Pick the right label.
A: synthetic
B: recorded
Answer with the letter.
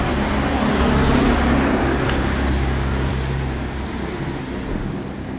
B